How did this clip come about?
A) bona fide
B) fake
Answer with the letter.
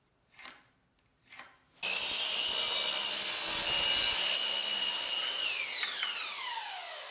A